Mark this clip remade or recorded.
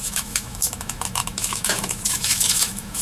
remade